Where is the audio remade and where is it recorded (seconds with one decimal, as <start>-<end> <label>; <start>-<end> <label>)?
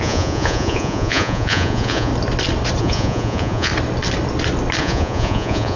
0.0-2.1 remade; 2.1-2.8 recorded; 2.8-3.7 remade; 3.7-4.8 recorded; 4.8-5.8 remade